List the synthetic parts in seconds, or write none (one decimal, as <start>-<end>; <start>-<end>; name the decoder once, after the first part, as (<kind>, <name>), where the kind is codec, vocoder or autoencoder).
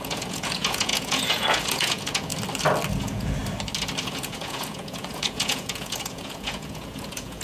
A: 0.0-2.3 (vocoder, Vocos); 2.9-3.4; 4.0-7.4